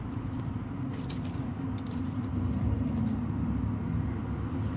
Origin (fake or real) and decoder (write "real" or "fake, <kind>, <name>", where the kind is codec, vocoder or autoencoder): real